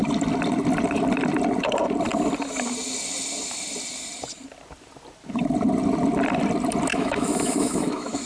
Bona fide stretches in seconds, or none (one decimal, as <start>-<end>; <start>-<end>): 0.0-6.9